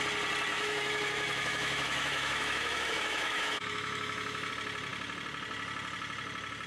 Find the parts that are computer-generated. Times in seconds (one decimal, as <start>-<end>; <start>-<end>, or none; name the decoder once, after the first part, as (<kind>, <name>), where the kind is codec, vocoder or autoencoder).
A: 0.5-4.5 (autoencoder, DAC-VAE)

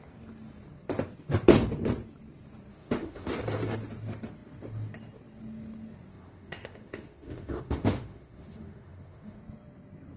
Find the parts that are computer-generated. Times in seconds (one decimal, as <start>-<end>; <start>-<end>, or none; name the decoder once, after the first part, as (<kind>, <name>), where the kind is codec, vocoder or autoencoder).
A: 2.7-3.3 (autoencoder, DAC-VAE); 6.1-9.4